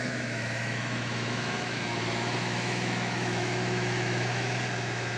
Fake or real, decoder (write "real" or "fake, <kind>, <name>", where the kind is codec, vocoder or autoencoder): fake, autoencoder, DAC-VAE